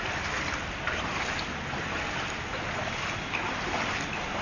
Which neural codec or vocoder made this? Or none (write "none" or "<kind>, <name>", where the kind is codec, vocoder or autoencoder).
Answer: none